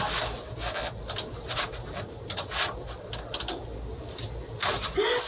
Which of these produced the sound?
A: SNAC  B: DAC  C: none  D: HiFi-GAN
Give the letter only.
C